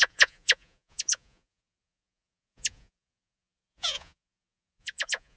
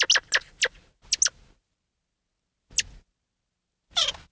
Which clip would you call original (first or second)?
second